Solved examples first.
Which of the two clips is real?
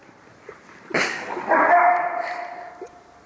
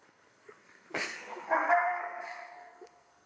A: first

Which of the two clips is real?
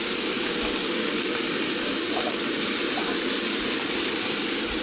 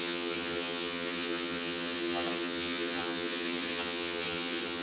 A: first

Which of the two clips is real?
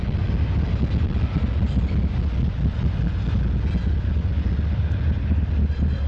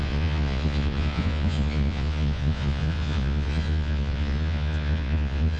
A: first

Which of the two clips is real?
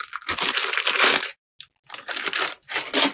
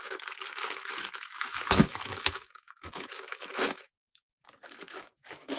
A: first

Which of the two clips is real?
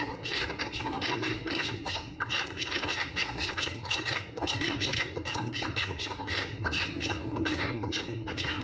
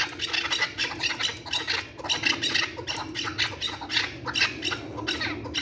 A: second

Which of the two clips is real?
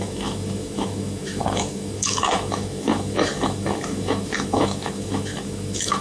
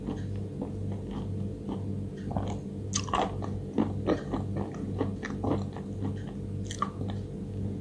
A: second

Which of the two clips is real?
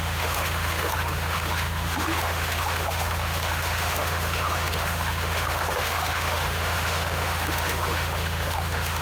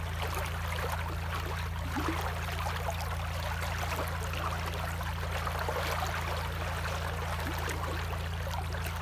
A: second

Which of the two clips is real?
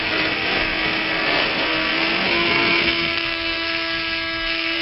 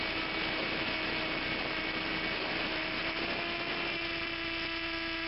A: second